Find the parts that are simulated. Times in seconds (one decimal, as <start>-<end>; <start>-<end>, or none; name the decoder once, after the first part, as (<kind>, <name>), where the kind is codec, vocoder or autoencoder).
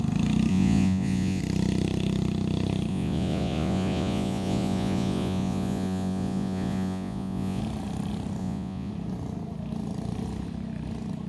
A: 0.5-1.4 (vocoder, Vocos); 2.9-7.6; 8.4-8.9